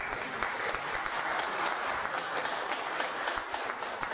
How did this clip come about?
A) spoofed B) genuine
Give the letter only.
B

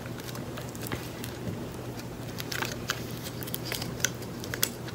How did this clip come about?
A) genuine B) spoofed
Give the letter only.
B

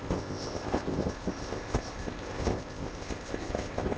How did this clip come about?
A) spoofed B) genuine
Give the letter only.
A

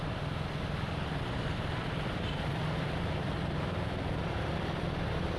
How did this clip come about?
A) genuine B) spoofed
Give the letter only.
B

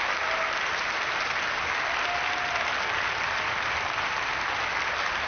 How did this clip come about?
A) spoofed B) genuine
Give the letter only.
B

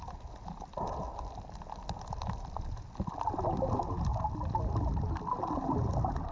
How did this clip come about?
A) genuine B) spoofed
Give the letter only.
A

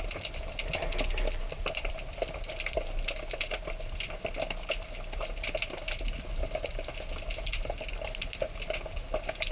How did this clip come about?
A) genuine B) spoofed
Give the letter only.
A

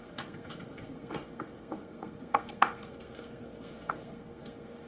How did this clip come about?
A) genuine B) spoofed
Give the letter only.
B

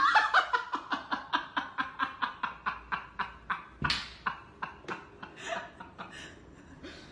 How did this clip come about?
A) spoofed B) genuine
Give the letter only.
B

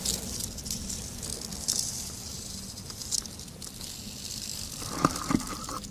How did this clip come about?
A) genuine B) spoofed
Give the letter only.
A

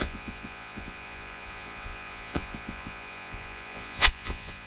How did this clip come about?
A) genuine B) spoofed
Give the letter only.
B